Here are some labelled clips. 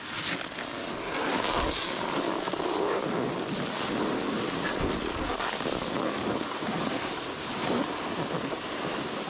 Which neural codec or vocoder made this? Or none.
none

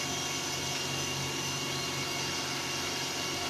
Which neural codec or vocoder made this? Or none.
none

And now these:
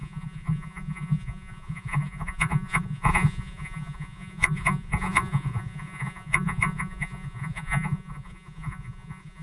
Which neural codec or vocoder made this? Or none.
vocoder, Vocos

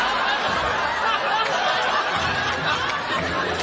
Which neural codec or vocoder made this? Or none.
none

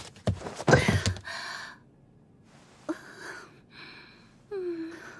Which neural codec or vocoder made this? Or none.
none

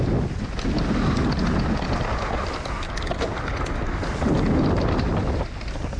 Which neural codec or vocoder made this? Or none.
none